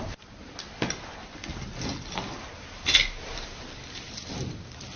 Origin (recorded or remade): recorded